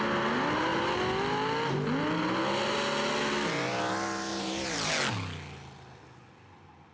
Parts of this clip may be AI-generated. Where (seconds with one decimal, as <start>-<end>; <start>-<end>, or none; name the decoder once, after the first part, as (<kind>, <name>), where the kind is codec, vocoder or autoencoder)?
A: 4.3-4.9 (vocoder, BigVGAN v2)